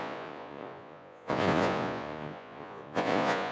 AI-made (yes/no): yes